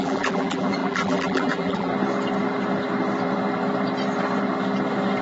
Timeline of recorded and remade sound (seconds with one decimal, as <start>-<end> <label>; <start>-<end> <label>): 0.0-1.9 remade; 1.9-5.2 recorded